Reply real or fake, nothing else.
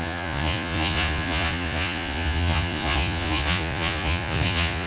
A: fake